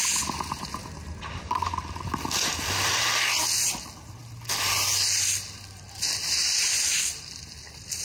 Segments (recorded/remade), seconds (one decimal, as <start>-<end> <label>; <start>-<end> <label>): 0.0-8.0 recorded

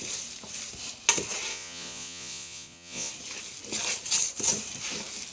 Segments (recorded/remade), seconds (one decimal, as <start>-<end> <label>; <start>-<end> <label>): 0.0-1.5 recorded; 1.5-3.1 remade; 3.1-5.3 recorded

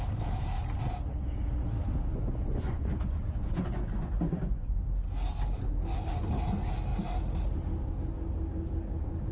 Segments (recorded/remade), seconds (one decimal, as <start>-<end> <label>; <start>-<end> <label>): 0.0-2.1 recorded; 2.1-4.8 remade; 4.8-9.3 recorded

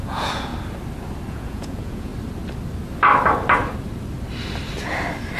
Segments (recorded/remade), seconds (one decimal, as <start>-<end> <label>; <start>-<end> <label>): 0.0-0.5 remade; 0.5-1.3 recorded; 1.3-2.1 remade; 2.1-5.4 recorded

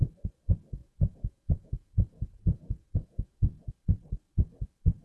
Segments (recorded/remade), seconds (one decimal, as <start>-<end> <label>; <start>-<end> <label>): 0.0-0.8 recorded; 0.8-3.7 remade; 3.7-5.0 recorded

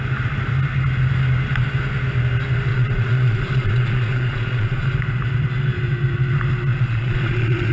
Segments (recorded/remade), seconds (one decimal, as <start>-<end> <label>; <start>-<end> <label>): 0.0-2.7 recorded; 2.7-4.9 remade; 4.9-6.7 recorded; 6.7-7.7 remade

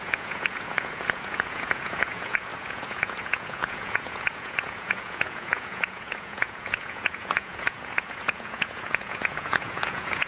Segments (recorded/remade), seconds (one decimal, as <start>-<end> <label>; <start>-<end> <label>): 0.0-10.3 remade

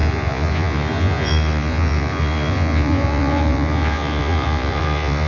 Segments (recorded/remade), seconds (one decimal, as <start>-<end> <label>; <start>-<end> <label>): 0.0-5.3 remade